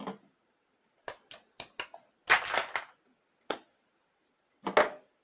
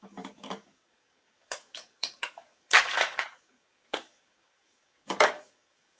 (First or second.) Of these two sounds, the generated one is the second